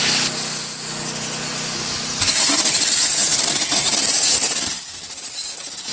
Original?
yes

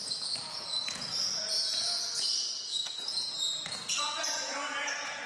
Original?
no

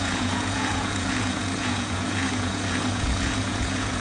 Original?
no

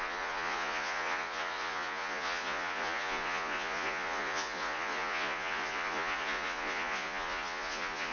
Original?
no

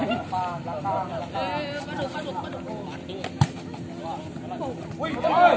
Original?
yes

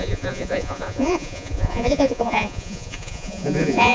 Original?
no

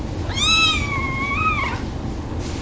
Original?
yes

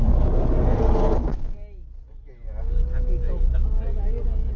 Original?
yes